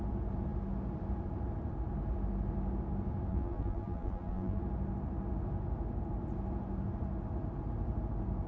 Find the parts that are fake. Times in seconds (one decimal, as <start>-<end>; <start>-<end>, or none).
3.3-4.6